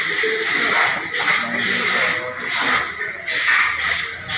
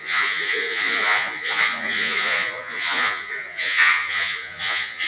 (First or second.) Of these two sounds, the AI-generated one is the second